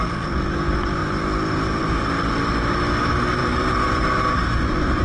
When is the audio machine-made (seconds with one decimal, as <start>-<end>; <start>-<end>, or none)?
3.4-5.0